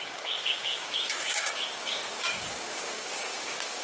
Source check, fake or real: fake